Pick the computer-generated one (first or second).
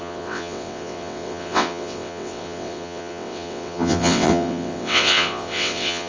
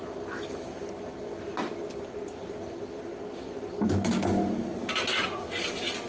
first